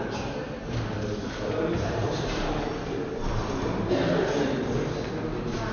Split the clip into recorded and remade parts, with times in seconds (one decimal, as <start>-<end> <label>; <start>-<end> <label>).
0.0-0.6 recorded; 0.6-3.9 remade; 3.9-5.7 recorded